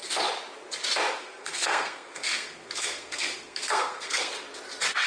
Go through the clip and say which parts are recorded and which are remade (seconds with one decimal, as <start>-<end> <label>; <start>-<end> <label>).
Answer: 0.0-1.2 recorded; 1.2-4.3 remade; 4.3-5.1 recorded